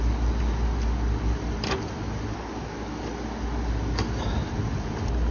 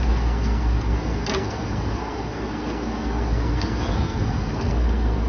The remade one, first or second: second